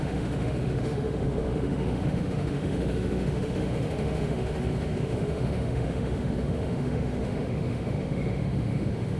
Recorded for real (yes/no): no